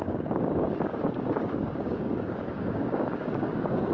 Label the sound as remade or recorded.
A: remade